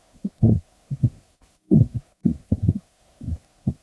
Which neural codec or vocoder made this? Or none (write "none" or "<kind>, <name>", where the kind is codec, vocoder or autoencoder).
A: codec, SNAC